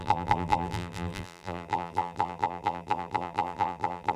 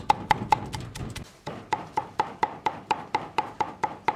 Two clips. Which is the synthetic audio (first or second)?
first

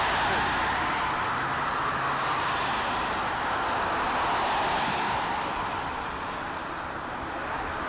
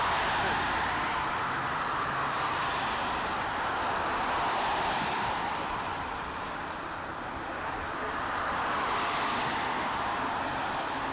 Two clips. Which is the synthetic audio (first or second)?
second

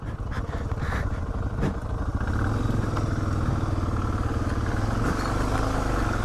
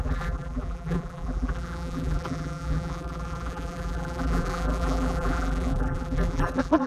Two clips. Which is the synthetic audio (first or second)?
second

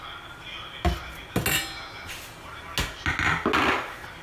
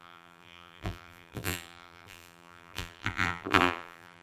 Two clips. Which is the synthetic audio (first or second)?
second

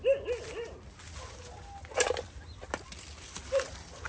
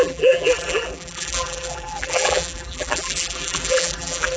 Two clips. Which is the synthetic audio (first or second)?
second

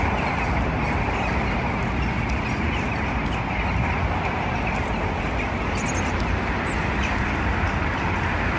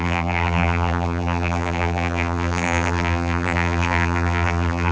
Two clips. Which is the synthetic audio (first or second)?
second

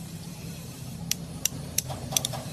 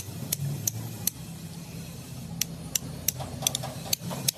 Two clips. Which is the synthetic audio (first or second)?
first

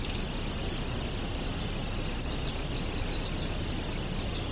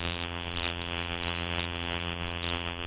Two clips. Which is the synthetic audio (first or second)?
second